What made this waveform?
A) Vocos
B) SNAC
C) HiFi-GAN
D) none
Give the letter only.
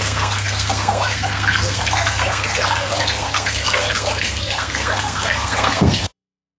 B